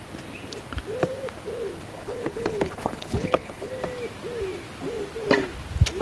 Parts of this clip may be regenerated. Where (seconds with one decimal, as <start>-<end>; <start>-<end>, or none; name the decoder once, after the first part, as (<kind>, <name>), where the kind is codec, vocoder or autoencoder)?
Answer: 1.9-3.7 (codec, HILCodec)